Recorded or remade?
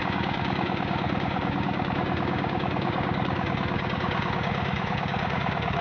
remade